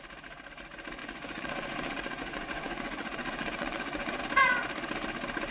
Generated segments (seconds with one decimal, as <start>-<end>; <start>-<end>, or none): 1.0-4.2

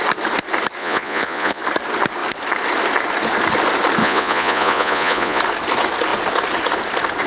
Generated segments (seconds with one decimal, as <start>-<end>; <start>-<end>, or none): 0.8-1.6; 4.0-5.4